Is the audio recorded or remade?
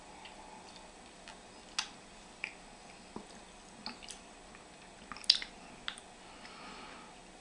recorded